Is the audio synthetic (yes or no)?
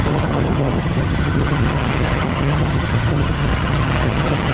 yes